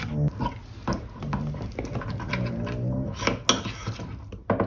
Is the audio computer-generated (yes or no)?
no